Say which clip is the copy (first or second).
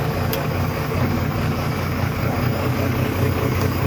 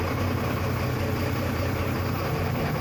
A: first